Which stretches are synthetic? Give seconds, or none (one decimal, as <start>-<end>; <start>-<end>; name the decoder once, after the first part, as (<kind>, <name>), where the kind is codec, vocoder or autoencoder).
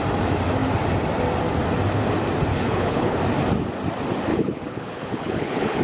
2.5-3.2 (codec, HILCodec); 4.3-5.8